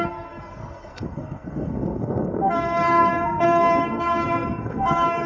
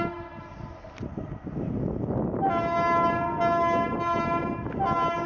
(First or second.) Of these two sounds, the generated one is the first